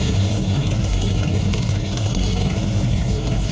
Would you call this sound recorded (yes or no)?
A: no